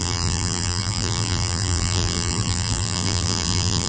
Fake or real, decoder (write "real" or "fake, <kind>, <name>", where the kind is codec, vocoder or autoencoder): fake, vocoder, BigVGAN v2